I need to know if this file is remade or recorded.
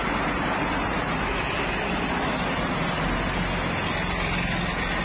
recorded